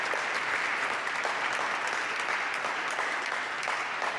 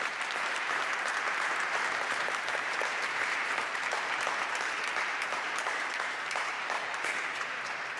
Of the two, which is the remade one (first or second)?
second